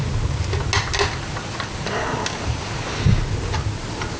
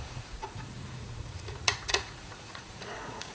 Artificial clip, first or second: second